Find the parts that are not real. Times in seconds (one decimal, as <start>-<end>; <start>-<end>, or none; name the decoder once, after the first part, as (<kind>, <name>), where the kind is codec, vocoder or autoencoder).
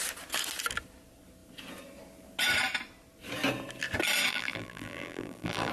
4.3-5.7 (vocoder, BigVGAN v2)